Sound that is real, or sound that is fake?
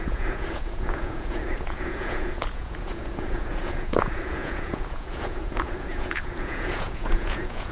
fake